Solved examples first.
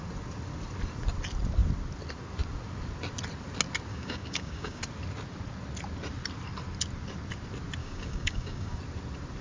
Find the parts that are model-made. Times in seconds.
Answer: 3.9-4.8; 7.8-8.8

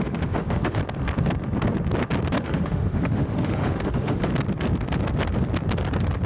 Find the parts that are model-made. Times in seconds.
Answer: 0.0-0.8; 2.4-4.3

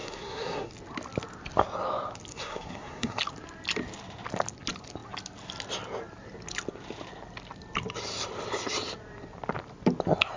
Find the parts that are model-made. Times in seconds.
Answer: 0.0-0.7; 2.3-3.2

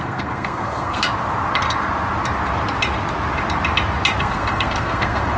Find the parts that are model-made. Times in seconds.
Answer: 0.0-1.0; 4.2-5.4

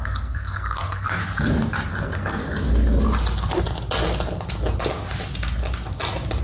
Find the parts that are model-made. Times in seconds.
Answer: 0.0-1.2; 1.9-2.4

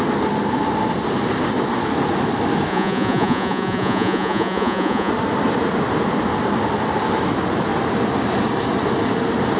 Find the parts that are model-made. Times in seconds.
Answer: 2.7-5.1